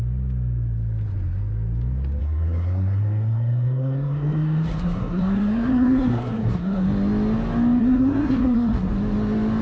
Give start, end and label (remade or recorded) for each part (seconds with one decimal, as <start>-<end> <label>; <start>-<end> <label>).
0.0-2.2 recorded; 2.2-6.8 remade; 6.8-7.8 recorded; 7.8-8.9 remade; 8.9-9.6 recorded